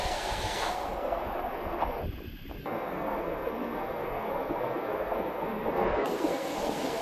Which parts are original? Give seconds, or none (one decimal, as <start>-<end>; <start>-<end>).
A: 2.0-2.6